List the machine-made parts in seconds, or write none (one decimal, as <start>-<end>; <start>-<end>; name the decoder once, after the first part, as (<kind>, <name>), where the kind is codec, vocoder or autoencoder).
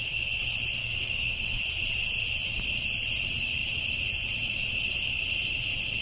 0.8-1.6 (codec, DAC)